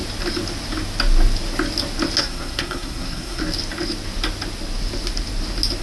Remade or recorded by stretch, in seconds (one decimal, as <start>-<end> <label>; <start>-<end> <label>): 0.0-2.2 recorded; 2.2-3.4 remade; 3.4-5.8 recorded